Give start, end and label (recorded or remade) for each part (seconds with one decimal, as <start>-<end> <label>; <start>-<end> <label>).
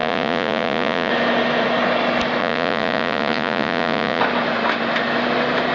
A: 0.0-1.1 remade; 1.1-2.4 recorded; 2.4-4.2 remade; 4.2-5.7 recorded